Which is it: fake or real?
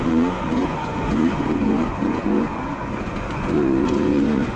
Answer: fake